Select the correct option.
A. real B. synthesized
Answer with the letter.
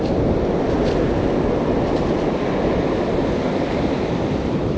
A